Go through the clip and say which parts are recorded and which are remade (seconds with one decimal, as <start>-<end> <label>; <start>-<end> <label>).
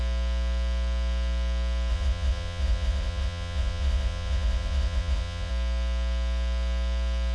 0.0-1.9 recorded; 1.9-5.5 remade; 5.5-7.3 recorded